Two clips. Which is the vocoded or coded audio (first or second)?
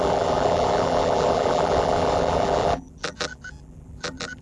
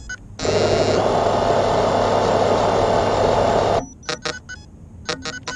first